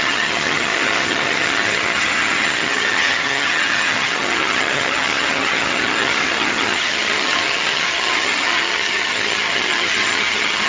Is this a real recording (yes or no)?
no